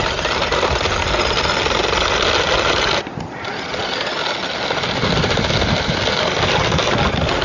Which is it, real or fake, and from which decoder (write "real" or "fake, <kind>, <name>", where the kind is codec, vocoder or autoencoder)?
real